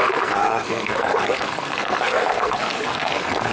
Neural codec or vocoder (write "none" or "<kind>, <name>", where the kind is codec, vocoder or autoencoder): codec, SNAC